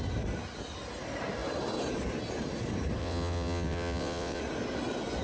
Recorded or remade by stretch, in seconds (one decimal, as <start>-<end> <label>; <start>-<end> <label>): 0.0-3.0 recorded; 3.0-4.4 remade; 4.4-5.2 recorded